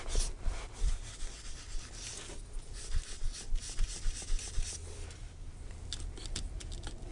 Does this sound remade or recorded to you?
recorded